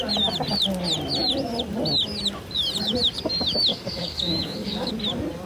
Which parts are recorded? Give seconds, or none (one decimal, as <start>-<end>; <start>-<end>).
0.0-3.7; 4.9-5.5